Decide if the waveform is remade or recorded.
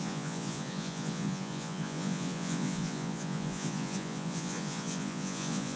remade